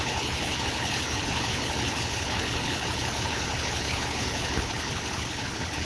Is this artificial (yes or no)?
yes